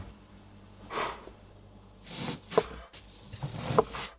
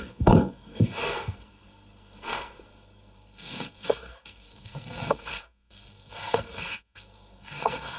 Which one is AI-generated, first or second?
second